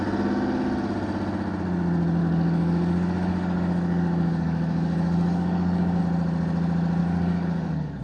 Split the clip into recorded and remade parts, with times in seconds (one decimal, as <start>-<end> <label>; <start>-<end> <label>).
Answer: 0.0-2.2 recorded; 2.2-6.0 remade; 6.0-7.0 recorded; 7.0-8.0 remade